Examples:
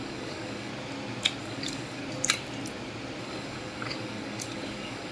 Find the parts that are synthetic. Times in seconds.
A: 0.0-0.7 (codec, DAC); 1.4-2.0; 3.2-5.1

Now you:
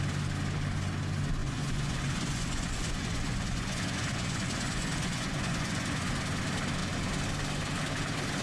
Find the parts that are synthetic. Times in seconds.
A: 1.4-6.1 (vocoder, Vocos)

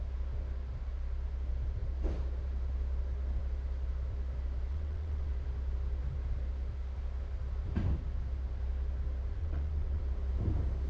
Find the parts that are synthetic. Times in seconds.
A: 4.7-5.3 (vocoder, WaveNeXt); 9.4-10.0